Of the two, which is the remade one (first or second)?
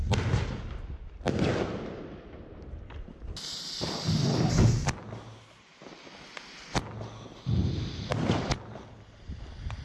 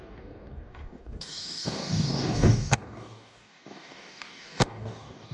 second